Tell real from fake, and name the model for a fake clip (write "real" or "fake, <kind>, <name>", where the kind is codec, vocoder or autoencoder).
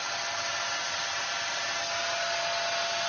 real